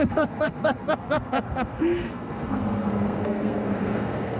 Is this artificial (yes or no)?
yes